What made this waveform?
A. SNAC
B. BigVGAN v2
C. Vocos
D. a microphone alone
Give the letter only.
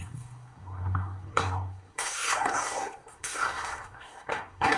A